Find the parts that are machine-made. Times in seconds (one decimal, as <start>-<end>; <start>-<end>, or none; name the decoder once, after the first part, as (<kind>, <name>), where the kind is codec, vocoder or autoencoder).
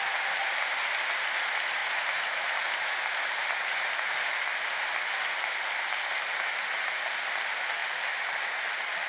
7.8-8.6 (vocoder, BigVGAN v2)